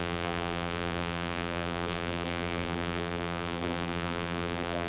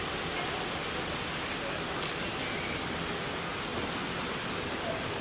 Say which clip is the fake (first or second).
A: first